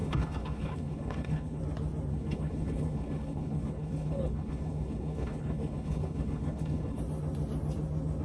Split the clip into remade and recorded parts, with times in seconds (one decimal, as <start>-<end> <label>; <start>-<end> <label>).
0.0-1.6 remade; 1.6-2.1 recorded; 2.1-7.0 remade; 7.0-8.2 recorded